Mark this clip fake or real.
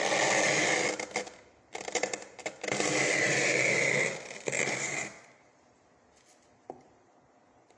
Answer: real